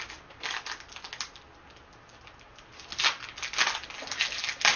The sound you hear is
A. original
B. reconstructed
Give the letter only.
A